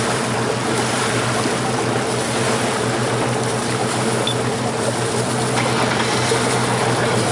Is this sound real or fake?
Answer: real